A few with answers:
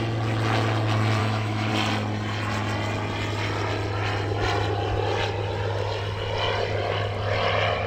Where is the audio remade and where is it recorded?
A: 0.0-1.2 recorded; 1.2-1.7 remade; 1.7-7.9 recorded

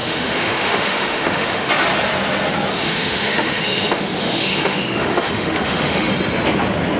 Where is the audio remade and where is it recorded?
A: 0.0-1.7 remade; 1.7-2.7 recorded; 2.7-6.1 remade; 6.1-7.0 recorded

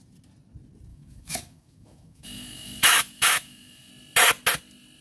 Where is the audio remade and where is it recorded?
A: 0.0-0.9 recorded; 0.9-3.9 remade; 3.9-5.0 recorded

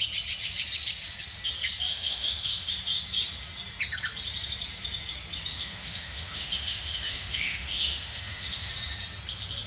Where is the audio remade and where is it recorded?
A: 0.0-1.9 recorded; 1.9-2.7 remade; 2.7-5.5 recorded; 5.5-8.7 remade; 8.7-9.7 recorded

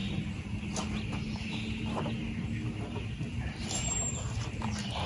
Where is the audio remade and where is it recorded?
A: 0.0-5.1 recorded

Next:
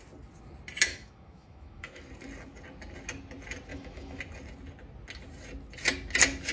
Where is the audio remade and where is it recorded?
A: 0.0-0.9 recorded; 0.9-2.1 remade; 2.1-3.7 recorded; 3.7-4.2 remade; 4.2-6.5 recorded

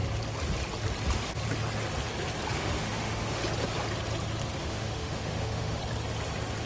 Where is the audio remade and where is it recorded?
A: 0.0-2.6 recorded; 2.6-3.4 remade; 3.4-4.6 recorded; 4.6-5.8 remade; 5.8-6.7 recorded

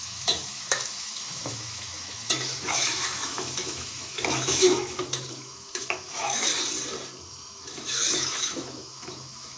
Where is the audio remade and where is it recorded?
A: 0.0-6.5 remade; 6.5-7.3 recorded; 7.3-9.6 remade